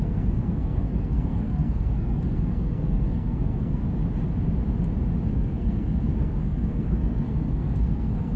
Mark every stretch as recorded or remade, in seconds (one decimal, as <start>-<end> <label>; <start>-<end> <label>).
0.0-3.8 remade; 3.8-5.3 recorded; 5.3-8.4 remade